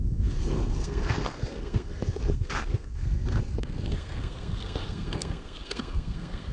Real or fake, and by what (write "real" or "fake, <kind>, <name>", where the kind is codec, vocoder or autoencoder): fake, codec, SNAC